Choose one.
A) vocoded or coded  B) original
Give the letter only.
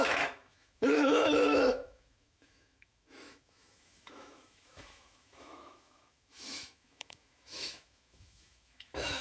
A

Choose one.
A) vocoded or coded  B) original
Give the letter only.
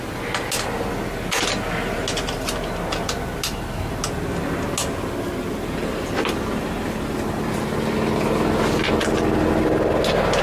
B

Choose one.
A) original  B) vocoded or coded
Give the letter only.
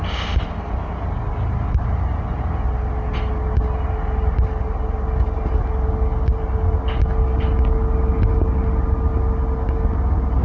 A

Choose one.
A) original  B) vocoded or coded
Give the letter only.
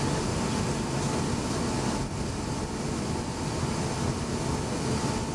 A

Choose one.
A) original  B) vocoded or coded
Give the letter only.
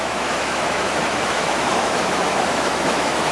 B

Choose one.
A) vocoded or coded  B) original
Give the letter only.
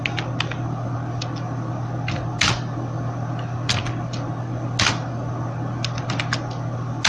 B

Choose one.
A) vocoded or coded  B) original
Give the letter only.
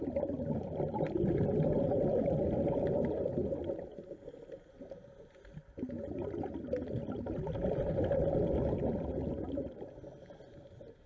B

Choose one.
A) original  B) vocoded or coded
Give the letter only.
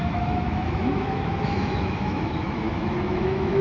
B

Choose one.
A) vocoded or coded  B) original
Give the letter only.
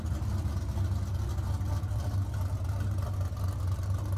B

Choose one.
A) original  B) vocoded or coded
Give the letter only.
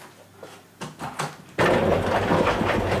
A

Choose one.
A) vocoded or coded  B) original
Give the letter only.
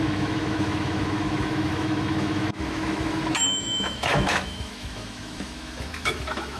A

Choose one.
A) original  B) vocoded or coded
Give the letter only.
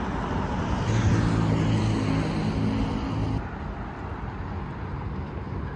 A